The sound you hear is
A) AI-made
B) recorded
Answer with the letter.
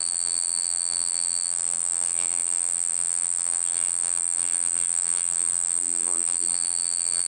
A